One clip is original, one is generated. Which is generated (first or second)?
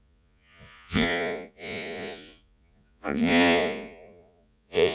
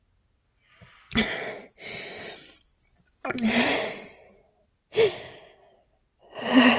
first